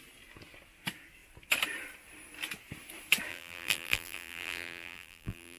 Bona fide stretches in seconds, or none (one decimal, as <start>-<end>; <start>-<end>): 0.0-3.3